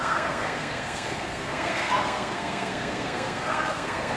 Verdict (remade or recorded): remade